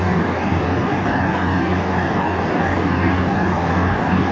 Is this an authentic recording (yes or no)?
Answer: no